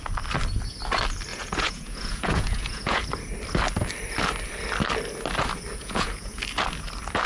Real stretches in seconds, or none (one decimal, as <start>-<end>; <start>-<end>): 0.0-1.3; 3.0-5.8; 6.4-7.3